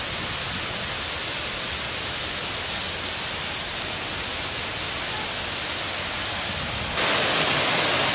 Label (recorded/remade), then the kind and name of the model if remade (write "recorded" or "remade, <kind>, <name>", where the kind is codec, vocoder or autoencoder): recorded